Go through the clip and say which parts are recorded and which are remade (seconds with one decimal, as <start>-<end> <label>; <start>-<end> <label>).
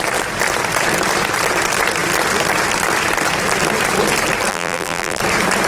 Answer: 0.0-4.5 recorded; 4.5-5.2 remade; 5.2-5.7 recorded